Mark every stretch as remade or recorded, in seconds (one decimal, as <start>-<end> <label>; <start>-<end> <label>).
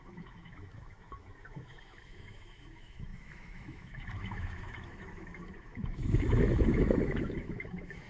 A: 0.0-8.1 remade